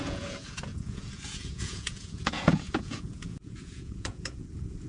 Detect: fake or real fake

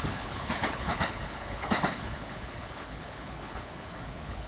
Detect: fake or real fake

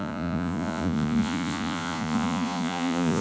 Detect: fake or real fake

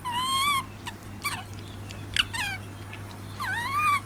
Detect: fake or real real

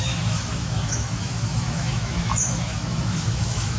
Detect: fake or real fake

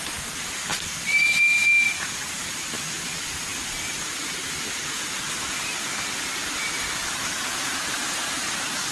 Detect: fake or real real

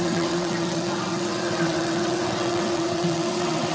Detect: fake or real fake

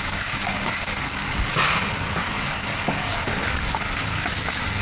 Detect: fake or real fake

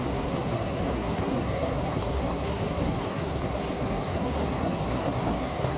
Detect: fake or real fake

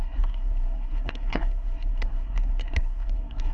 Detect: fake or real fake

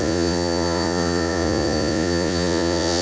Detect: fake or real fake